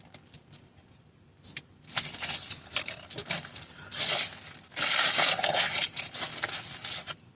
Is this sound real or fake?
real